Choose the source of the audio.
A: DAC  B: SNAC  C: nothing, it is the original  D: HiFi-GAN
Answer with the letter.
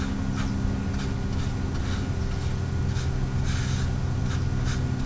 C